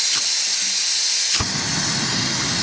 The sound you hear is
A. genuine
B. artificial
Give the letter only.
A